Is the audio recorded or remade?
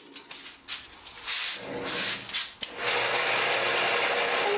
recorded